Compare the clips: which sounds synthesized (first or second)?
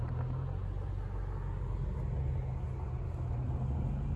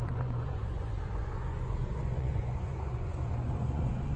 second